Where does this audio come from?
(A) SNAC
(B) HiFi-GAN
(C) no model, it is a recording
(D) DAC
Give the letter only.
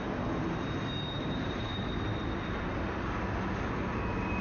C